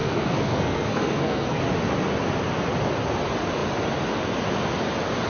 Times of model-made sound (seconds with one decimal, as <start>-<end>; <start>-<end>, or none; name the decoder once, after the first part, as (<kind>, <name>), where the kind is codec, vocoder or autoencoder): 0.0-1.6 (codec, SNAC)